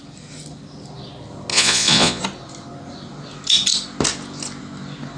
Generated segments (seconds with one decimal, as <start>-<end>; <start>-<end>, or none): 1.5-2.2